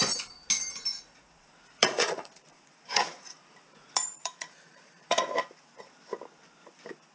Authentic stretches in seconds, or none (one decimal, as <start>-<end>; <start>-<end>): 0.0-0.9; 5.2-7.1